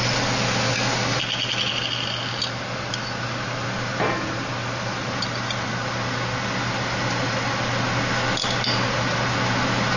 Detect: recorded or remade recorded